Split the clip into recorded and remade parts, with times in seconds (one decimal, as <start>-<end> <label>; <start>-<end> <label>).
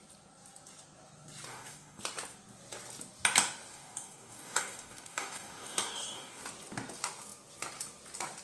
0.0-1.5 recorded; 1.5-2.0 remade; 2.0-3.7 recorded; 3.7-6.4 remade; 6.4-8.4 recorded